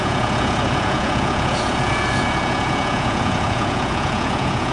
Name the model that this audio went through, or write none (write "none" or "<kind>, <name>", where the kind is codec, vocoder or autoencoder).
vocoder, Vocos